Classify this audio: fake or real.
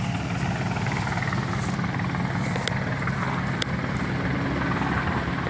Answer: real